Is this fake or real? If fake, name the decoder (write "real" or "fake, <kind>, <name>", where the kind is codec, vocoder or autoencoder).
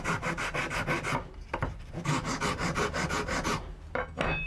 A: real